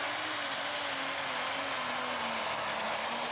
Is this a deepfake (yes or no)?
no